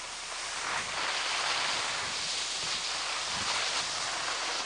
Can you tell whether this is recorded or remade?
recorded